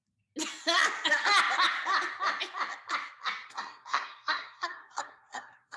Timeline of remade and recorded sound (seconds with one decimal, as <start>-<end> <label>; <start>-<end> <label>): 0.0-3.5 recorded; 3.5-5.8 remade